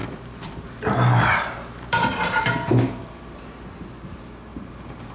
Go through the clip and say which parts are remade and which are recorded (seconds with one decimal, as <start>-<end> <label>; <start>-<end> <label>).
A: 0.0-3.1 remade; 3.1-4.5 recorded; 4.5-5.1 remade